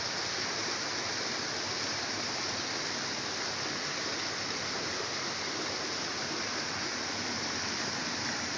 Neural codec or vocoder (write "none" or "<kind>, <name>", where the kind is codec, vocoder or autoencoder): none